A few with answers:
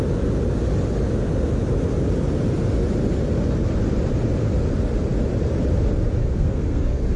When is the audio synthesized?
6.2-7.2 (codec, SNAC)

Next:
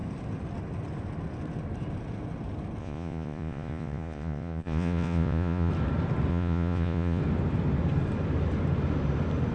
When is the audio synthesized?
2.8-5.7 (vocoder, Vocos); 6.3-7.2